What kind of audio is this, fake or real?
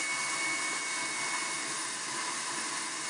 real